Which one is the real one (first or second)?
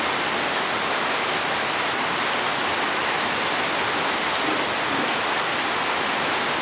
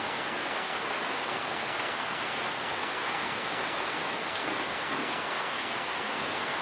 first